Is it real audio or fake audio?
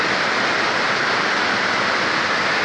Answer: real